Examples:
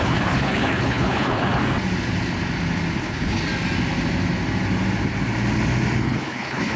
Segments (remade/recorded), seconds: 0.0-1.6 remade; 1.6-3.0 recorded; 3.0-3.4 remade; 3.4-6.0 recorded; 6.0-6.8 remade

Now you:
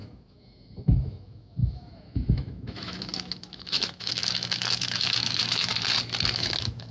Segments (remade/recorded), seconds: 0.0-5.7 remade; 5.7-6.3 recorded; 6.3-6.9 remade

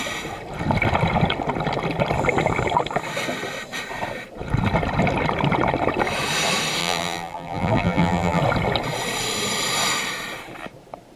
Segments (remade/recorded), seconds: 0.0-6.8 recorded; 6.8-8.4 remade; 8.4-11.2 recorded